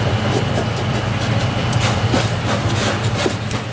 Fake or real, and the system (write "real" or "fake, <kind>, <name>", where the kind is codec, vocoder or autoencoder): fake, vocoder, BigVGAN v2